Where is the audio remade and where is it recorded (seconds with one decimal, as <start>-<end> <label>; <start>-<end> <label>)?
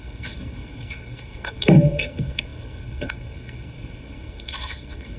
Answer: 0.0-5.2 remade